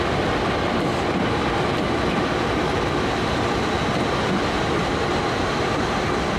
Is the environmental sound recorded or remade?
recorded